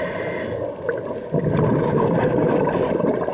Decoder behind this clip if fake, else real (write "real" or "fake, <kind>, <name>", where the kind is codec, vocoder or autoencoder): real